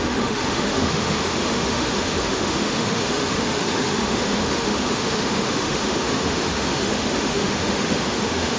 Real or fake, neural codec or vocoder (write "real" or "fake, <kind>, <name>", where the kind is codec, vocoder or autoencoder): fake, autoencoder, DAC-VAE